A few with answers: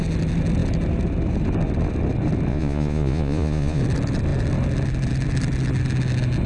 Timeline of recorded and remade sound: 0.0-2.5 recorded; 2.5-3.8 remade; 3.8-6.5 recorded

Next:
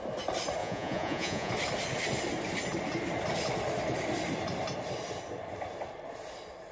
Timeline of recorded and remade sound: 0.0-0.6 recorded; 0.6-1.5 remade; 1.5-6.7 recorded

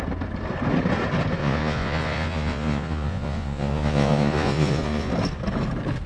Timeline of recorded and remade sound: 0.0-1.4 recorded; 1.4-5.1 remade; 5.1-6.1 recorded

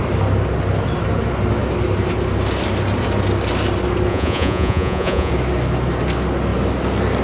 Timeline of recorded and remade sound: 0.0-4.1 recorded; 4.1-5.3 remade; 5.3-7.2 recorded